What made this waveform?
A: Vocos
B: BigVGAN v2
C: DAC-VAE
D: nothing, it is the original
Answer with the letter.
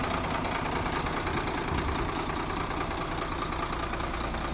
D